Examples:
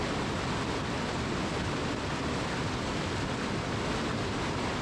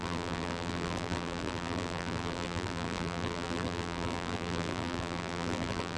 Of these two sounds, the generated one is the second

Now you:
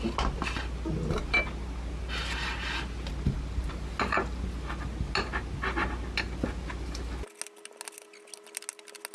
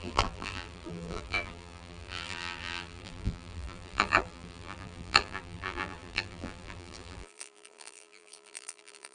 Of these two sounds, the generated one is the second